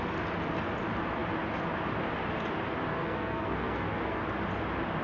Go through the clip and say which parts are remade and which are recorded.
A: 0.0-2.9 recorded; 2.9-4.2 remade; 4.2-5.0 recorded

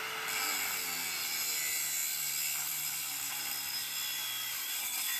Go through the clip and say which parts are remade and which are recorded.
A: 0.0-5.2 recorded

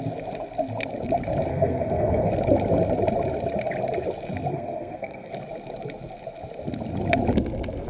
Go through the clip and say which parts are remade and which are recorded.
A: 0.0-1.5 recorded; 1.5-2.3 remade; 2.3-4.5 recorded; 4.5-5.3 remade; 5.3-7.9 recorded

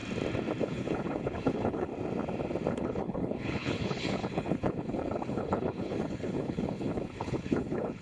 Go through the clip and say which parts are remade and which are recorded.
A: 0.0-0.6 recorded; 0.6-1.9 remade; 1.9-2.7 recorded; 2.7-8.0 remade

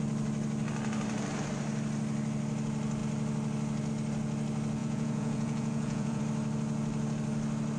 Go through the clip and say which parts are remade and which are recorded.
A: 0.0-4.8 recorded; 4.8-6.2 remade; 6.2-7.8 recorded

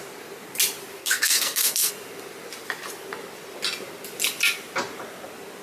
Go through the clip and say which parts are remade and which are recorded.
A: 0.0-1.0 recorded; 1.0-1.9 remade; 1.9-5.6 recorded

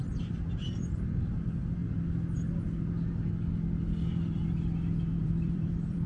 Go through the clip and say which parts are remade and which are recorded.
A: 0.0-1.8 remade; 1.8-5.2 recorded; 5.2-6.1 remade